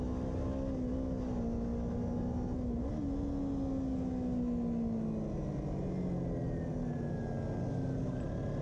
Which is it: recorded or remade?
recorded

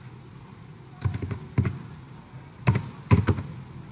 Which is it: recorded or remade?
recorded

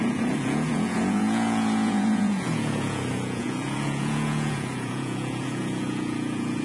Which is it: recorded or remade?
remade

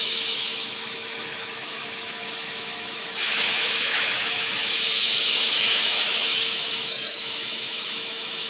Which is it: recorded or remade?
remade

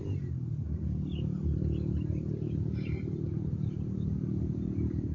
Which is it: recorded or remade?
recorded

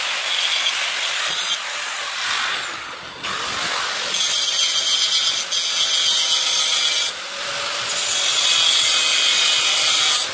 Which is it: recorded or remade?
recorded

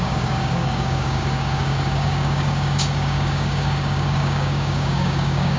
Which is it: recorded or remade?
remade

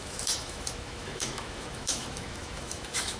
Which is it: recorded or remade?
remade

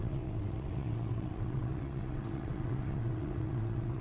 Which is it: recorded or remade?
remade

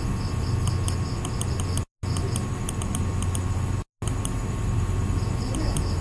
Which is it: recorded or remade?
recorded